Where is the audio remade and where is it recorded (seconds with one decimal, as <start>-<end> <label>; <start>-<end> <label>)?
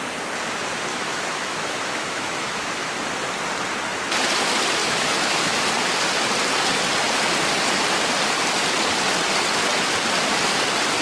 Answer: 0.0-0.9 recorded; 0.9-3.0 remade; 3.0-4.8 recorded; 4.8-5.6 remade; 5.6-11.0 recorded